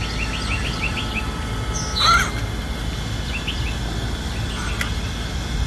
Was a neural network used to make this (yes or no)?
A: no